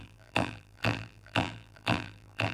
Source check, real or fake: fake